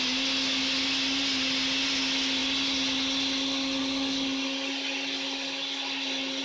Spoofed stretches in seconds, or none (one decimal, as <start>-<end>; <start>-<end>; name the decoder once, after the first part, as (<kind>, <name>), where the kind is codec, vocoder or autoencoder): none